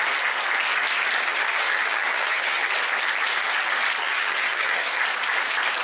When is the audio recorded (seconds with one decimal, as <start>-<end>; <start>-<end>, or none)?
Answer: 0.0-1.3; 2.7-4.0; 4.9-5.8